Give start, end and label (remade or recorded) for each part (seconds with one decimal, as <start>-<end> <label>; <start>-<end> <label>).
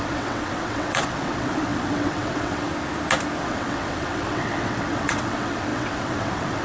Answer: 0.0-2.7 remade; 2.7-3.4 recorded; 3.4-6.6 remade